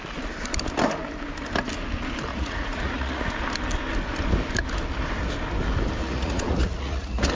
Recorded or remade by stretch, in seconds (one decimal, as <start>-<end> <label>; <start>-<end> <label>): 0.0-2.3 recorded; 2.3-3.3 remade; 3.3-6.0 recorded; 6.0-7.3 remade